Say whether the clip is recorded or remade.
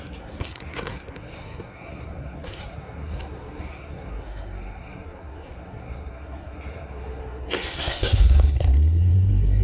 remade